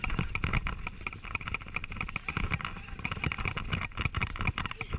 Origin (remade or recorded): recorded